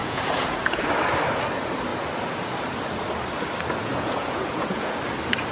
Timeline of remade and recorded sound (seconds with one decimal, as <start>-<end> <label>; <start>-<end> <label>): 0.0-0.9 remade; 0.9-3.8 recorded; 3.8-5.0 remade; 5.0-5.5 recorded